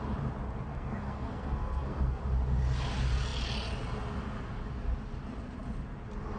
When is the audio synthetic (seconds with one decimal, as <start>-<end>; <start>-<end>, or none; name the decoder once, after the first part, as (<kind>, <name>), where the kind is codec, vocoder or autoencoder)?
0.7-2.2 (codec, SNAC)

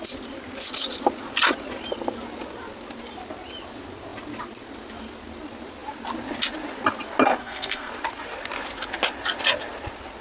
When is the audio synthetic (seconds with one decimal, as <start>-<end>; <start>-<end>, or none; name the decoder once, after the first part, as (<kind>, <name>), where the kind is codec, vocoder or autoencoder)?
7.4-7.9 (codec, SNAC)